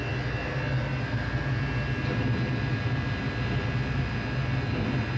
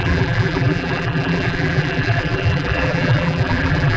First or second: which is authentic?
first